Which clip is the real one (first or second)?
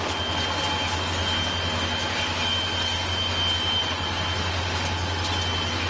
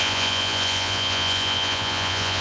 first